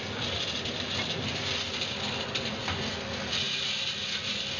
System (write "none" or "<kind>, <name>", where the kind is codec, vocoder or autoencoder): none